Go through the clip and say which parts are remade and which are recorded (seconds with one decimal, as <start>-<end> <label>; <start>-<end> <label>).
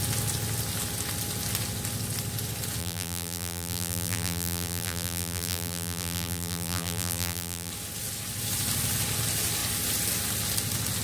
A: 0.0-2.8 recorded; 2.8-7.7 remade; 7.7-11.0 recorded